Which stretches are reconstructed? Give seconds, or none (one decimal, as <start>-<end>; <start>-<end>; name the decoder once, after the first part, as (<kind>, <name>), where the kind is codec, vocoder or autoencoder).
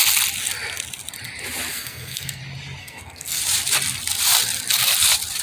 1.7-2.4 (codec, SNAC); 2.8-3.4